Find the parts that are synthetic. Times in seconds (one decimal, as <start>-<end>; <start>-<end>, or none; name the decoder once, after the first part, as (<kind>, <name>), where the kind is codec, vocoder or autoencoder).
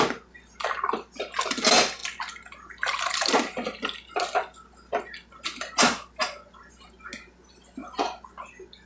none